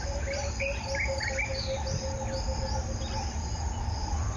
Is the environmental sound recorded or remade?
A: recorded